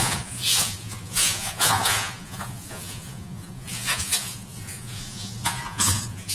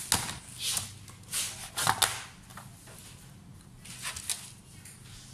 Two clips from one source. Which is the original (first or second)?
second